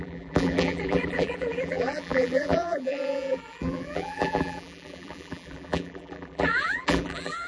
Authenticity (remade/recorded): remade